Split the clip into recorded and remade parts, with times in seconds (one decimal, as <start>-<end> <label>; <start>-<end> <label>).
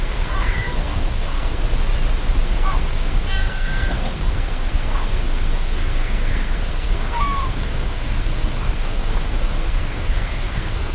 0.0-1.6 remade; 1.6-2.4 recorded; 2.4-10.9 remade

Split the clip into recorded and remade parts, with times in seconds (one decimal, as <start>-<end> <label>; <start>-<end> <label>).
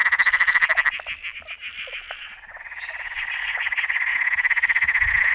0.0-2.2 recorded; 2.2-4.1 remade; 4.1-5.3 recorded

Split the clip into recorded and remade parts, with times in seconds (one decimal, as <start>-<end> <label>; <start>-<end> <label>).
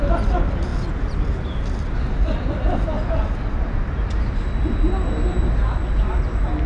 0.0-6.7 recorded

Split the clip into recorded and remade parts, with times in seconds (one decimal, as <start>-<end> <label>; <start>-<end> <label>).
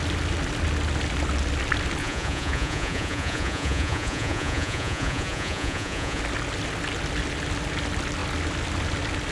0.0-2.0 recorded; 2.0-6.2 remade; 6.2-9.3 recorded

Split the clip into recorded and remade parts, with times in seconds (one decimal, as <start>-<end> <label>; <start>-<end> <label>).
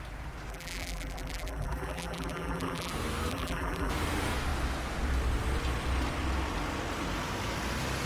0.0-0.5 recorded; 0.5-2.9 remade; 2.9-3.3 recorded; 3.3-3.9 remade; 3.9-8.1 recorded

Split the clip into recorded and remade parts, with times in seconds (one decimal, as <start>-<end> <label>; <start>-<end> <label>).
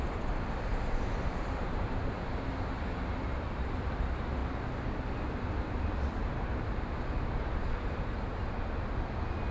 0.0-0.7 recorded; 0.7-2.0 remade; 2.0-6.2 recorded; 6.2-8.4 remade; 8.4-9.5 recorded